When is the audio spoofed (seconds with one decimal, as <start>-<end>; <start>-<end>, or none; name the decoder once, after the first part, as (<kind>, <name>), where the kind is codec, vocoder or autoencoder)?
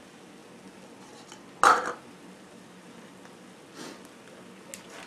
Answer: none